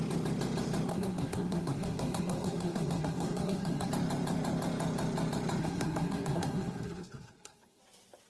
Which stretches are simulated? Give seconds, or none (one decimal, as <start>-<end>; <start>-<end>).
0.9-3.9; 5.6-7.8